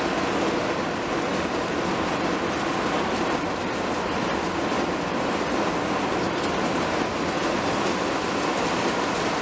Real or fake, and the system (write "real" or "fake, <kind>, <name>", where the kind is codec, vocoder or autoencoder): real